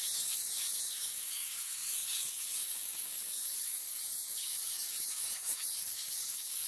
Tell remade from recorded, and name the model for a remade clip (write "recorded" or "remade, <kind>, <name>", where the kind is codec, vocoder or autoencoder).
remade, codec, DAC